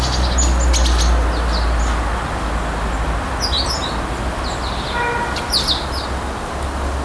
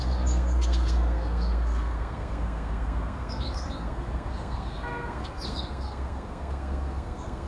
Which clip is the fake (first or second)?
second